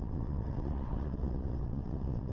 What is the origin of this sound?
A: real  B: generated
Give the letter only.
B